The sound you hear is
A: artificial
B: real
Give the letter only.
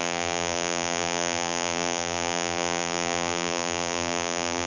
A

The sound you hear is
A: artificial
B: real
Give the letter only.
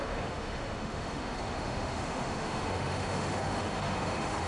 A